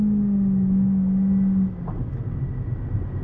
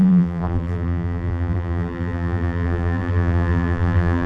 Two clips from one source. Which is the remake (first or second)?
second